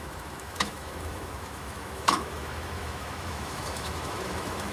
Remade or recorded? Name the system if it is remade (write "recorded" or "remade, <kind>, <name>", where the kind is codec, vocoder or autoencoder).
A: remade, autoencoder, DAC-VAE